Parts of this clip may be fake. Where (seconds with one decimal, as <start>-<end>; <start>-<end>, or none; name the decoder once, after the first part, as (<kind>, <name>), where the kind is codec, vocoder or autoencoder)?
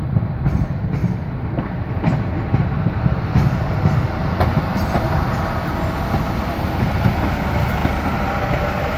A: 1.0-1.6 (vocoder, BigVGAN v2)